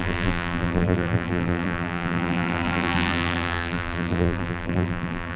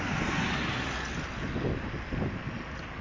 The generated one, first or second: first